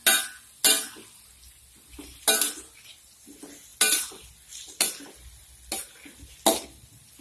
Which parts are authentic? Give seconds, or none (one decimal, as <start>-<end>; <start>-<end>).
0.0-7.2